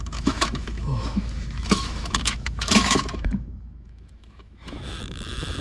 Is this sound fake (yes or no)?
yes